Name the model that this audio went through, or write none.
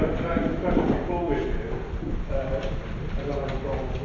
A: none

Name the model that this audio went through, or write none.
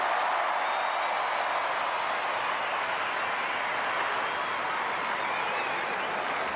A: none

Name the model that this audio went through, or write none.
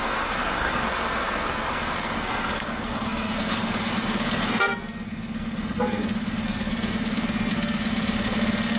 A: codec, SNAC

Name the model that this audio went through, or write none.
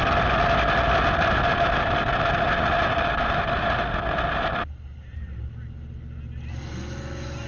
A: none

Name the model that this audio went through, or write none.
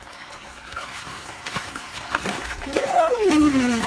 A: codec, SNAC